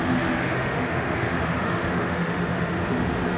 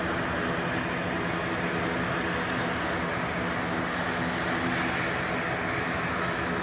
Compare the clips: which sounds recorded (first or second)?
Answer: second